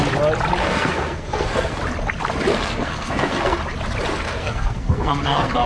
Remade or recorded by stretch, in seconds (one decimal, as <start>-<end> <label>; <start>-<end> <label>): 0.0-0.6 recorded; 0.6-1.8 remade; 1.8-2.5 recorded; 2.5-3.6 remade; 3.6-4.1 recorded; 4.1-5.7 remade